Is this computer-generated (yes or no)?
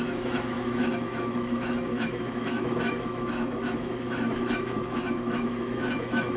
yes